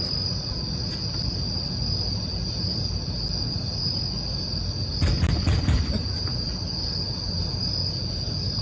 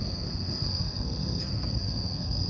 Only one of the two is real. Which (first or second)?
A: first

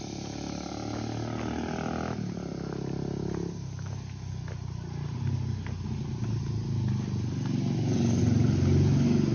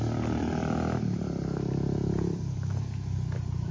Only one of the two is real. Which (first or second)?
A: first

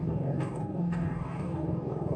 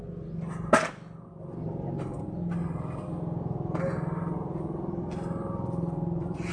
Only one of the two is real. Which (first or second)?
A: second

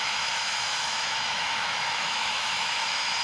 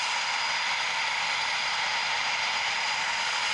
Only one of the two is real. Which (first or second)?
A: second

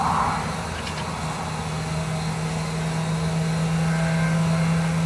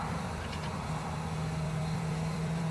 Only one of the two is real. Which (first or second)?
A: first